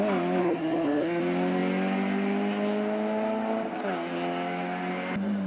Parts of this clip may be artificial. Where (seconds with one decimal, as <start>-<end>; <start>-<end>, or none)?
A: 0.4-1.2